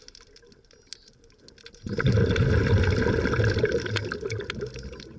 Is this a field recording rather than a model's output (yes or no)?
yes